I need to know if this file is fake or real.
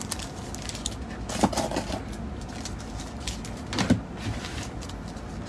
real